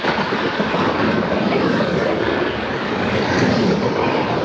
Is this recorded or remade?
remade